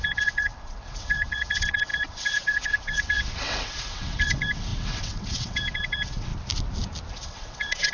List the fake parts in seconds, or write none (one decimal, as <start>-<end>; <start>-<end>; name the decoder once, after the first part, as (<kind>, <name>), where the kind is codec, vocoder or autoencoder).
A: 0.0-6.3 (vocoder, WaveNeXt); 7.1-7.9